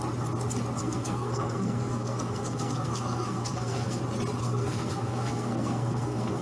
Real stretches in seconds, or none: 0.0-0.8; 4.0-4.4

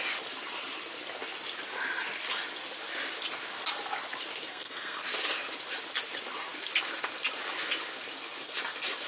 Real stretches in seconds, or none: 0.0-4.5; 5.0-9.1

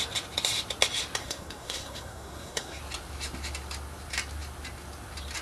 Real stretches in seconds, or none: 0.0-1.2; 2.8-5.4

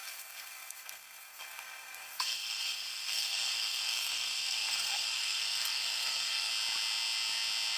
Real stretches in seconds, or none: 6.5-7.8

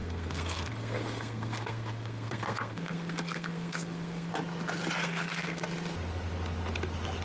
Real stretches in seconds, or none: 4.3-5.0; 5.6-7.2